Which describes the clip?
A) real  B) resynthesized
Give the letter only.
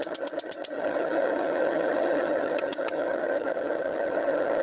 B